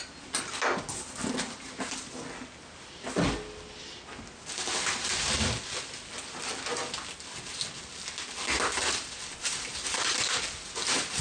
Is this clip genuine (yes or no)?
yes